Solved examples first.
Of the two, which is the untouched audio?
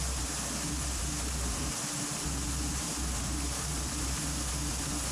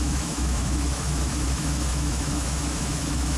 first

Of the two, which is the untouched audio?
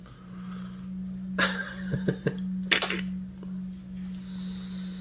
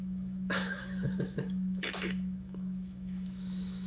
first